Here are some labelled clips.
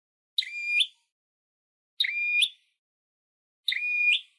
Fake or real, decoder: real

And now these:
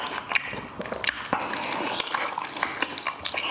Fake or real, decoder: real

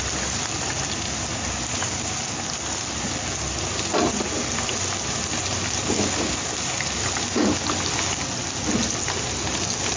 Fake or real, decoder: real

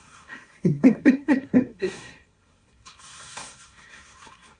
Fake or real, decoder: fake, codec, SNAC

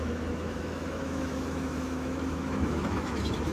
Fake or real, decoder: fake, autoencoder, DAC-VAE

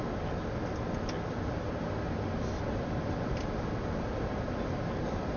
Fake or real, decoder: real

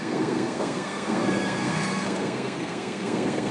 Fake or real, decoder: fake, codec, SNAC